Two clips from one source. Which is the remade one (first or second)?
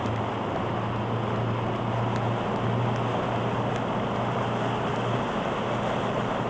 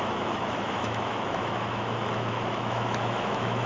second